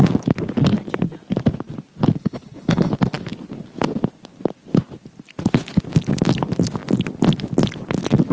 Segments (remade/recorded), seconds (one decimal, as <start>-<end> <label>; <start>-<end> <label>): 0.0-2.2 recorded; 2.2-2.9 remade; 2.9-8.3 recorded